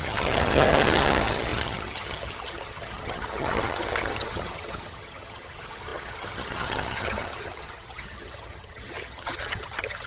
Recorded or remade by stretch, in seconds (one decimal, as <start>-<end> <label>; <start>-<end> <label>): 0.0-10.1 remade